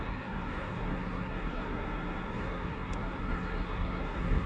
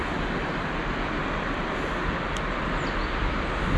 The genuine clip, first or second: second